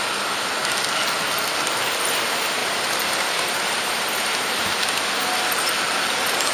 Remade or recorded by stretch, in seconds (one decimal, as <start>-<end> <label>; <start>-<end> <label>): 0.0-2.6 recorded; 2.6-4.8 remade; 4.8-6.5 recorded